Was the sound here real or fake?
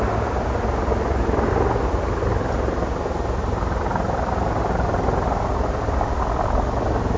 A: real